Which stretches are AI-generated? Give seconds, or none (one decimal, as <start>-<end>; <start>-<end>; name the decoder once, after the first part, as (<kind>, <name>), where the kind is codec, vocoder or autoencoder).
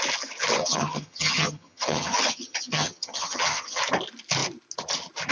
0.6-3.8 (vocoder, HiFi-GAN)